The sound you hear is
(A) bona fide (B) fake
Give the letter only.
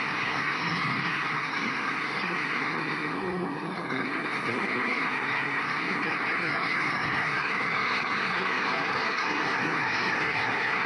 B